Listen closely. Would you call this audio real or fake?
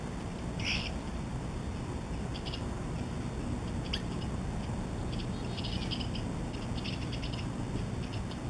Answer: real